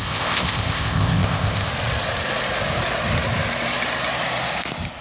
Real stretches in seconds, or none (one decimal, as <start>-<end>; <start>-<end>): 1.7-5.0